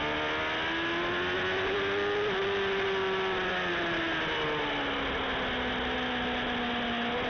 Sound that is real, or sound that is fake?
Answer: real